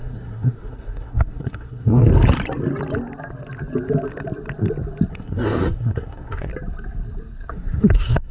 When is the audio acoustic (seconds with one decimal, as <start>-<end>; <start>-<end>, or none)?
2.1-5.1; 6.5-7.5